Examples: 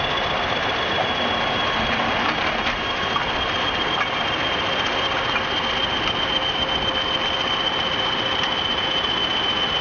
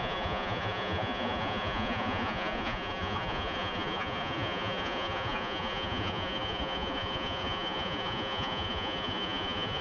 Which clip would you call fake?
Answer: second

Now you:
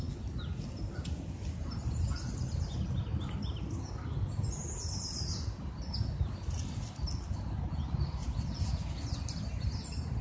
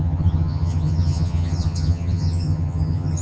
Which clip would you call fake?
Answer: second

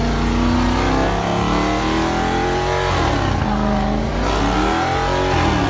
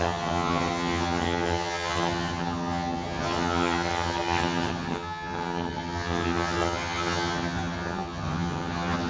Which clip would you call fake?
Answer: second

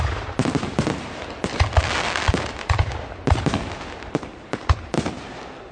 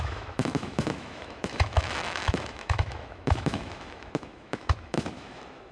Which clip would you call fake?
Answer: second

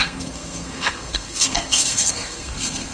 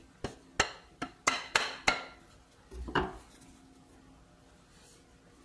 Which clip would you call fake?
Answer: first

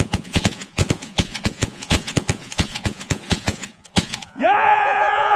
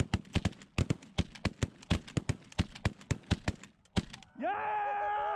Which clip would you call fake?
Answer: first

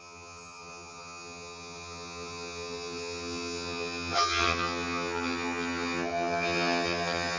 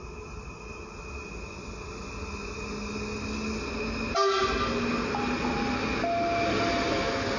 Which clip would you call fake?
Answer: first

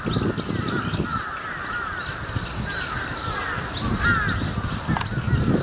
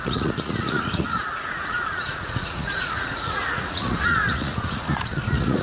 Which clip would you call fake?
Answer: second